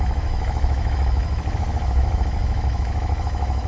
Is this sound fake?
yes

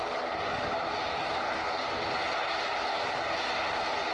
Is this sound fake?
no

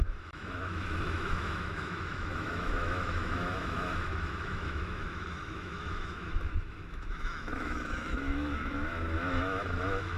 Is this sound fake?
yes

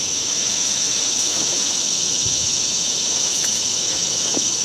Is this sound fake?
yes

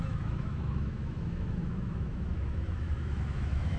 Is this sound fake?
yes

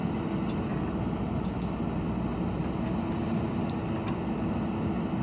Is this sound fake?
no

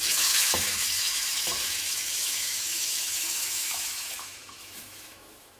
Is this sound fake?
yes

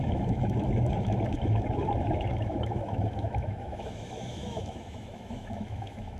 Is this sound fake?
yes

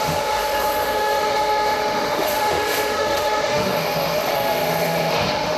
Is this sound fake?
yes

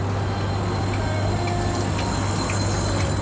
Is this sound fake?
no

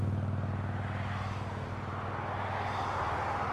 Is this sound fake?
no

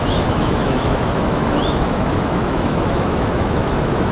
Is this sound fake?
yes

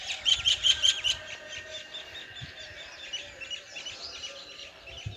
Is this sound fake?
no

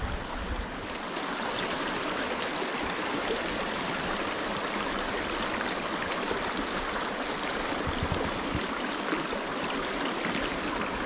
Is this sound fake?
no